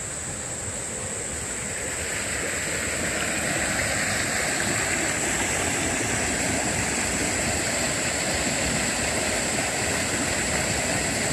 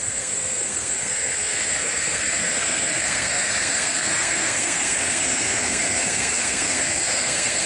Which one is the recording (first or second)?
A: first